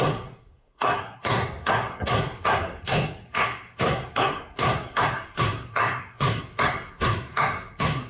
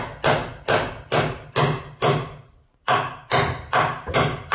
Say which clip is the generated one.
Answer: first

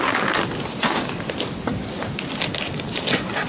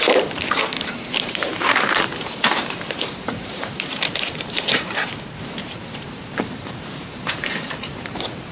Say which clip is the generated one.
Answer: second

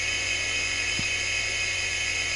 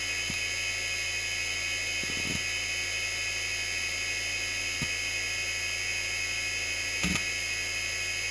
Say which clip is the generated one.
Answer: first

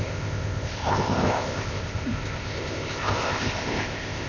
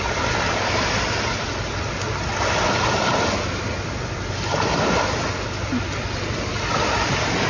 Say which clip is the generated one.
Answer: first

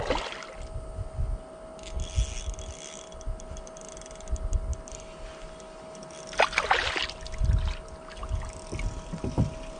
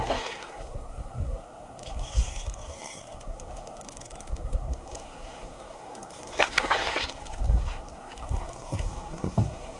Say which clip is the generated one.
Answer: second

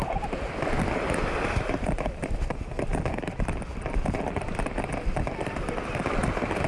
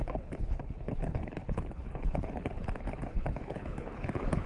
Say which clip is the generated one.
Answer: second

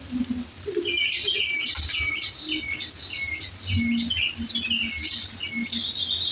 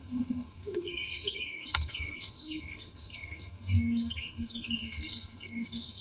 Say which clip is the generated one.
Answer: second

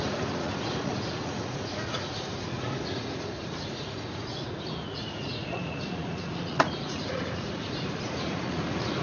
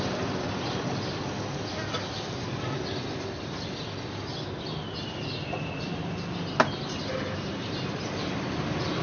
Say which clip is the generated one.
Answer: first